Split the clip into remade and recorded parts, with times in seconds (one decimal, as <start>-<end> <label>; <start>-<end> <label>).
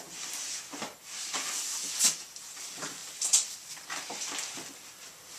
0.0-5.4 recorded